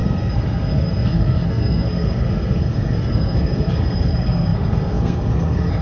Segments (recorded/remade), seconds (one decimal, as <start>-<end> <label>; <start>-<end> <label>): 0.0-5.8 remade